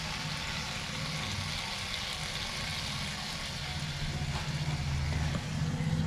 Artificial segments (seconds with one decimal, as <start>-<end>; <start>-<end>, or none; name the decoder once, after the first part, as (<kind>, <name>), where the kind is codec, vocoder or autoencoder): none